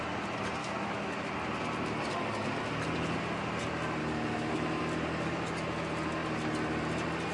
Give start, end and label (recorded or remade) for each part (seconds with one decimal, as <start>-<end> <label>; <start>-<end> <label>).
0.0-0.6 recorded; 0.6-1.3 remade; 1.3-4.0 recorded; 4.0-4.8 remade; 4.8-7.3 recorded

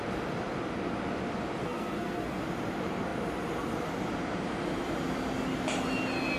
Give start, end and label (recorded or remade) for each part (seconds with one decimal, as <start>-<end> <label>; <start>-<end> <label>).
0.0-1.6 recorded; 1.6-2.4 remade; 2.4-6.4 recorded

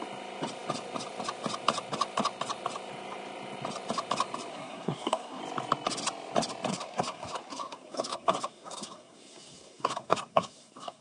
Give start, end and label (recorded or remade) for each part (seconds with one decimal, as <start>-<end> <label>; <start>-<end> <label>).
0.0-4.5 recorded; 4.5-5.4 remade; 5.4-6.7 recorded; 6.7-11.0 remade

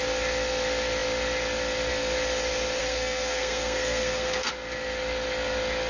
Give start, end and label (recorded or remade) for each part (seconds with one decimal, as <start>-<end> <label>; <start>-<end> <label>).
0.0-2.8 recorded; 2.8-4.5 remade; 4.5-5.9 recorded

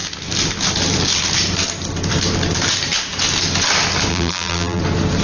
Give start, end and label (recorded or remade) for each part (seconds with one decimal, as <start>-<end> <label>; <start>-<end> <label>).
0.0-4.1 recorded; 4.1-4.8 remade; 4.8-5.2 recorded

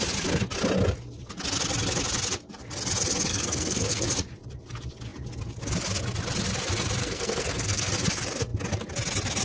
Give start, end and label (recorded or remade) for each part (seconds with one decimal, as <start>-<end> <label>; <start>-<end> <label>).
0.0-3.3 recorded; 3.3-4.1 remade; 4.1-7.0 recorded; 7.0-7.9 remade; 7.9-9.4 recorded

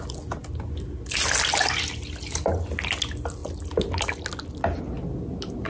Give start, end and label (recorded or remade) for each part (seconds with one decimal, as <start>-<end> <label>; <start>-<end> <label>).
0.0-5.7 recorded